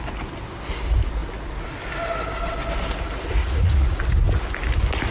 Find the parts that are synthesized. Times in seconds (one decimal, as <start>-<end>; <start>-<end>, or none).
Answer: 3.4-4.0